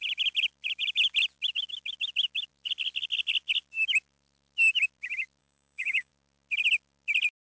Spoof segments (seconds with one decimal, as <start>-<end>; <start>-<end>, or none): 5.4-6.1